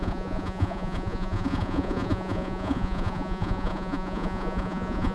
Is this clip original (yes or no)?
no